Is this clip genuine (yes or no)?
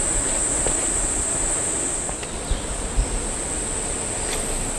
yes